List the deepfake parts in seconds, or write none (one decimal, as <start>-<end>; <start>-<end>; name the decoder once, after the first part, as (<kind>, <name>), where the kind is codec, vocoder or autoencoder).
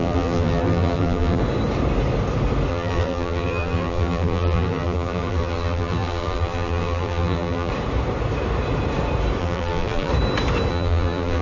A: 0.0-1.4 (vocoder, BigVGAN v2); 2.7-7.7; 9.4-10.1; 10.7-11.4